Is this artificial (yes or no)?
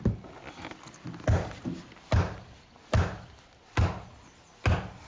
no